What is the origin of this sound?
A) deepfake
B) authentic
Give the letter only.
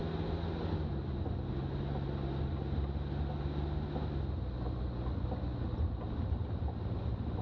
B